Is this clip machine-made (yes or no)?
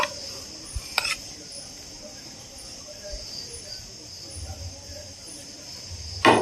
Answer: no